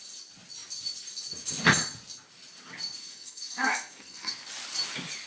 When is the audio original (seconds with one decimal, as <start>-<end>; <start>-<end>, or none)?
0.0-3.0; 4.3-5.3